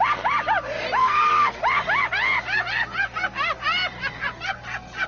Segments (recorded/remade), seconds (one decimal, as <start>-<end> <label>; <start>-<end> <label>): 0.0-1.0 recorded; 1.0-1.6 remade; 1.6-5.1 recorded